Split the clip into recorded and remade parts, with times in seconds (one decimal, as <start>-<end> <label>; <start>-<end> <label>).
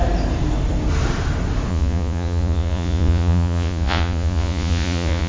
0.0-1.7 recorded; 1.7-5.3 remade